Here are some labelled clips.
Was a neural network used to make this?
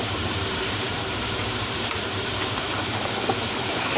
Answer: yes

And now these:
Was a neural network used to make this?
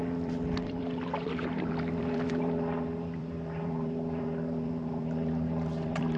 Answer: yes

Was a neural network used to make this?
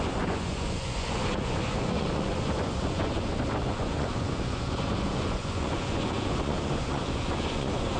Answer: yes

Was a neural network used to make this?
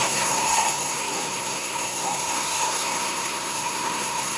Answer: yes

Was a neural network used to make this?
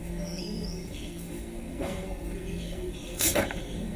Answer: yes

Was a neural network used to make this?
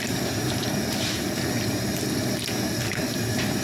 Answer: no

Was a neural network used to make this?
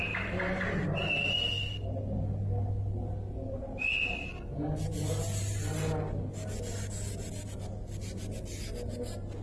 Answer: no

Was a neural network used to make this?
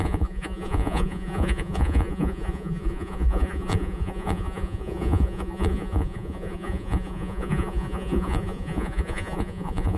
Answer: yes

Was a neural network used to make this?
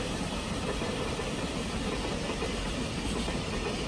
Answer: no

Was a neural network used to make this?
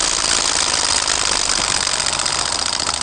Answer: no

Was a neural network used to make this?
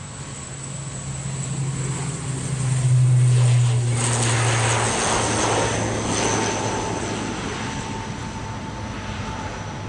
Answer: no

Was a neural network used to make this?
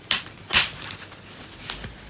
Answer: no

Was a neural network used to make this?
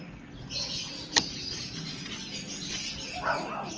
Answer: no